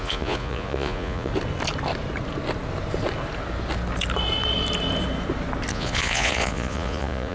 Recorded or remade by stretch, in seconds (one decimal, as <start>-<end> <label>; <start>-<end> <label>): 0.0-1.3 remade; 1.3-5.7 recorded; 5.7-7.3 remade